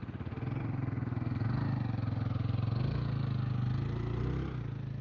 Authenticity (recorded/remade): recorded